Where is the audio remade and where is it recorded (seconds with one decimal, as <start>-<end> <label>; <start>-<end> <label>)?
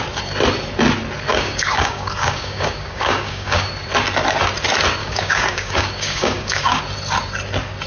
0.0-1.3 recorded; 1.3-3.7 remade; 3.7-5.0 recorded; 5.0-6.8 remade; 6.8-7.9 recorded